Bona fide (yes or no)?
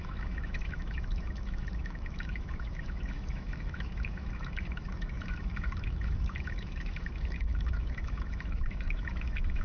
no